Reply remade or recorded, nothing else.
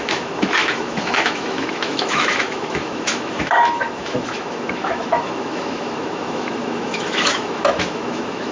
remade